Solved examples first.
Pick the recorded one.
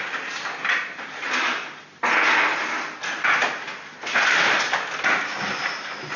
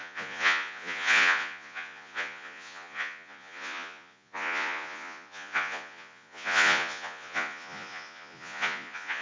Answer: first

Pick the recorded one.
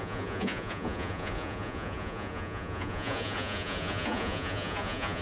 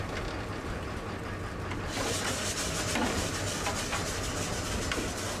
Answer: second